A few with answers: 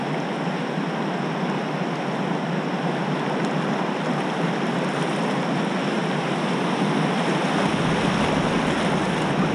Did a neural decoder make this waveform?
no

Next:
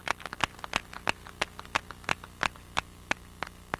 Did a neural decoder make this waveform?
no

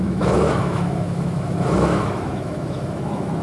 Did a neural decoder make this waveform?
yes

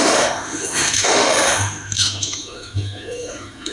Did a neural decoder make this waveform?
yes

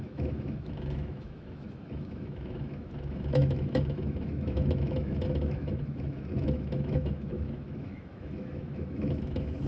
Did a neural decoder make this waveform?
yes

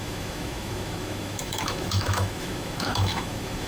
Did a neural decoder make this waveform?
yes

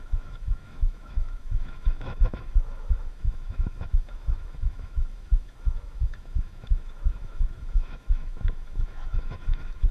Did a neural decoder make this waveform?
yes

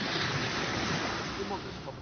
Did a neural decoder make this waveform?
no